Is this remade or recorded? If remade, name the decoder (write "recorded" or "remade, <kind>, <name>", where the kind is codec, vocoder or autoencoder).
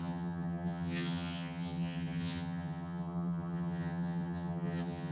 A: remade, vocoder, HiFi-GAN